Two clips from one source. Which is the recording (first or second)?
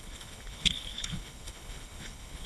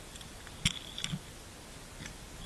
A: second